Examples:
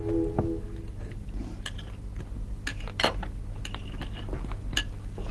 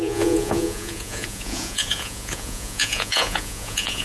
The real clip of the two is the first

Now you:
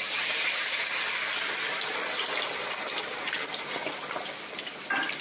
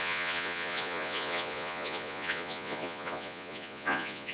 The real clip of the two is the first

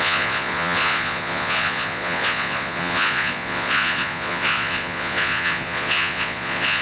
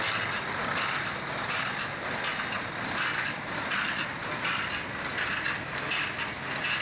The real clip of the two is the second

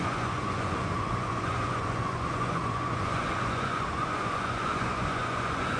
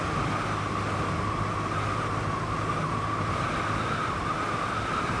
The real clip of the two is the second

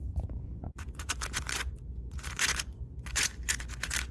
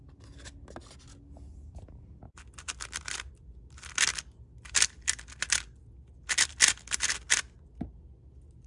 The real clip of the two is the second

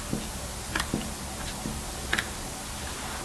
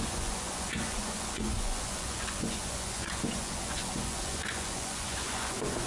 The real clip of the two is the first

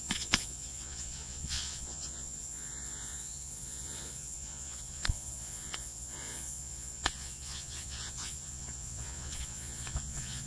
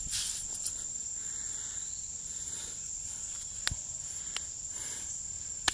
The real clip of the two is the second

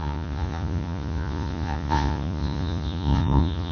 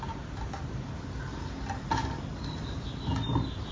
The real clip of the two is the second